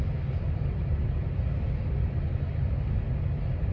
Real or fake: real